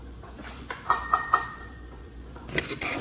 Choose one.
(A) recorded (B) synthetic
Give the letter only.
B